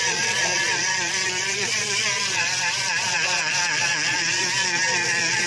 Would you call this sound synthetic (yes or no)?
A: yes